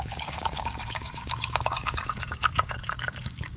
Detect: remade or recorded remade